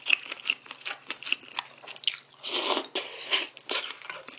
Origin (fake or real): real